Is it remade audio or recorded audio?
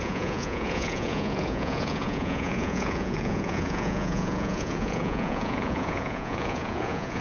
remade